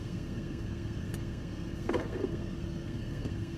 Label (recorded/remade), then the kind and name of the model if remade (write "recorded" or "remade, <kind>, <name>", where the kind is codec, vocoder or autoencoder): remade, codec, SNAC